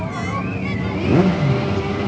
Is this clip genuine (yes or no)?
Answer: yes